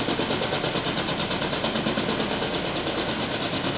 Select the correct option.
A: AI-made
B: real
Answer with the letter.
B